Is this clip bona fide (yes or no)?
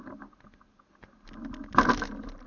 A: yes